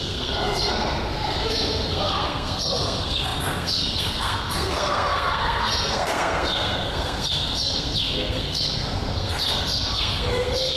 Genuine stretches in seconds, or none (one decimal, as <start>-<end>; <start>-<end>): none

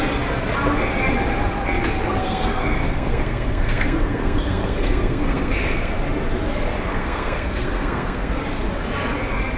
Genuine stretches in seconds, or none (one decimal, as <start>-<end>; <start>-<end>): 0.0-2.2; 5.9-6.9; 8.3-9.6

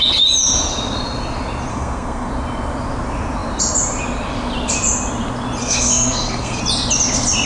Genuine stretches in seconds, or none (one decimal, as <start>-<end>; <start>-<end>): 0.0-1.7; 2.3-5.6; 6.6-7.5

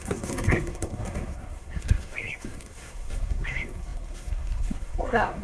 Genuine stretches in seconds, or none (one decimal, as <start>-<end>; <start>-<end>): none